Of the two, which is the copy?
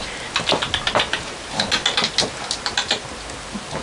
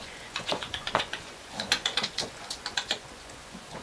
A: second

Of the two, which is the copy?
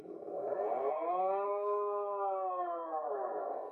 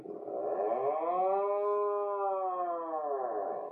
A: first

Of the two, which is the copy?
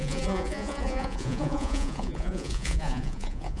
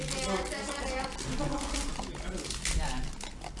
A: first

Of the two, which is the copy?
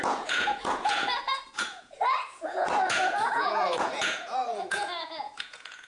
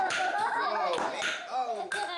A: first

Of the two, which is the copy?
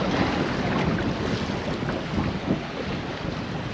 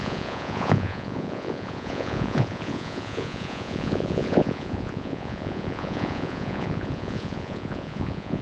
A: second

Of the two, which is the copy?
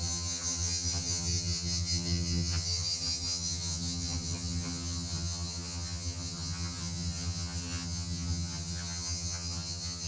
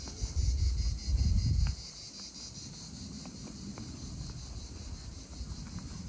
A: first